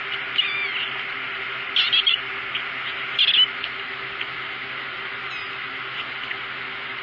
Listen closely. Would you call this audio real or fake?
real